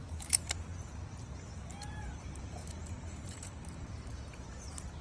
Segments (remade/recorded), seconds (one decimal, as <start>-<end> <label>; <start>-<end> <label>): 0.0-0.9 remade; 0.9-2.0 recorded; 2.0-5.0 remade